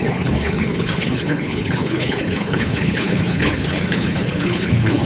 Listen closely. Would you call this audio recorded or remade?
remade